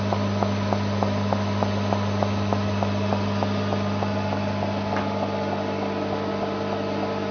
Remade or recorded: recorded